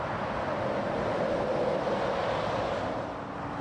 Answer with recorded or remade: recorded